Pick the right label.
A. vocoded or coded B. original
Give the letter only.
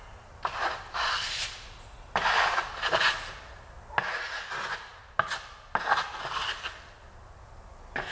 B